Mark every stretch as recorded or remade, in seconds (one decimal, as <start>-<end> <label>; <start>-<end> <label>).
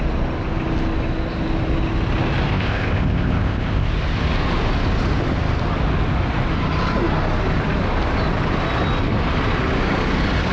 0.0-2.5 recorded; 2.5-3.9 remade; 3.9-10.5 recorded